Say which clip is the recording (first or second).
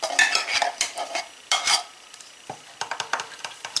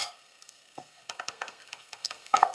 first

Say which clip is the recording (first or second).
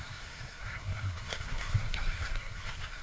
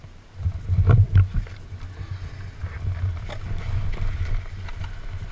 second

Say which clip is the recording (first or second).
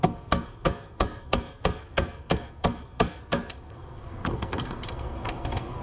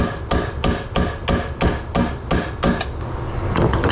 second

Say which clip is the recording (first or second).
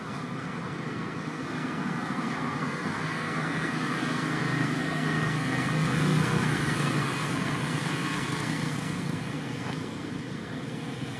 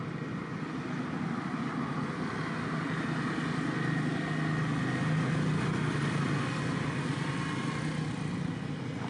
second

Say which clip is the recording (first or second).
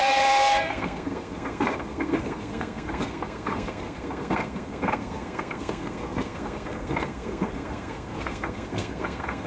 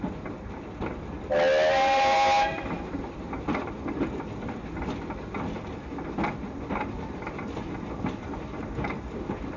second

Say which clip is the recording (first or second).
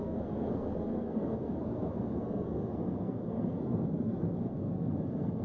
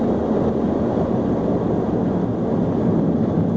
second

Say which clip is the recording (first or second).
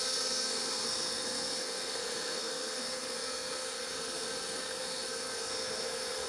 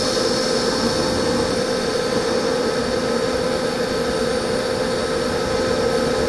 second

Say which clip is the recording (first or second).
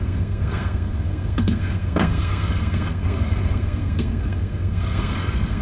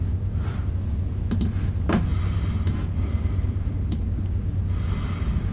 second